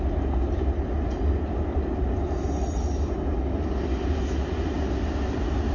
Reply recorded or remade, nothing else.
recorded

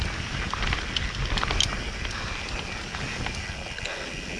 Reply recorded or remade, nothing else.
recorded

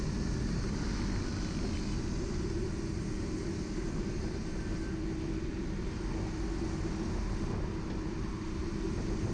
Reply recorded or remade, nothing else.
recorded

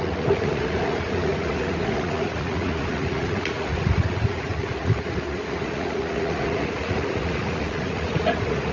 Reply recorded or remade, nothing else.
remade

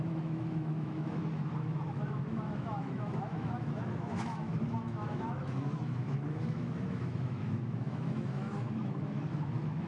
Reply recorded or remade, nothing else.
remade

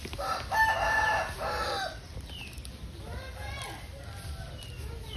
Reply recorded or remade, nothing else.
recorded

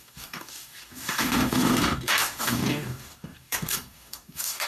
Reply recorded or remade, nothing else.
remade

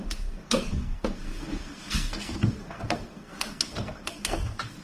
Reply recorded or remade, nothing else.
remade